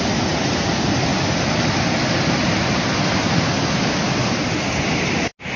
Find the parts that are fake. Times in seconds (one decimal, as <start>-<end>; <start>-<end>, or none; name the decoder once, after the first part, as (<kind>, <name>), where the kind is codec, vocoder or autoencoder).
4.2-4.9 (vocoder, BigVGAN v2)